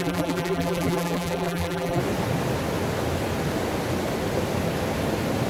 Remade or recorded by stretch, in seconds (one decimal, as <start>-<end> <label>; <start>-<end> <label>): 0.0-2.0 remade; 2.0-5.5 recorded